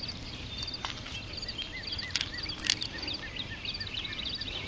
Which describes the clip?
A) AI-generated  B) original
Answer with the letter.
B